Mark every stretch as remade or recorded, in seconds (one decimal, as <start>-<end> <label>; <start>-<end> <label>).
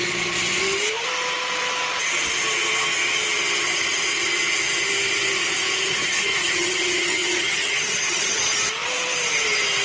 0.0-5.9 recorded; 5.9-8.4 remade; 8.4-9.8 recorded